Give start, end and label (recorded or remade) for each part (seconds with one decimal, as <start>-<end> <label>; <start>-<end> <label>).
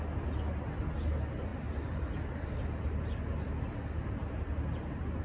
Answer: 0.0-5.2 recorded